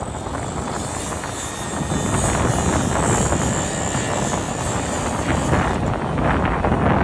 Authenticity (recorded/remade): recorded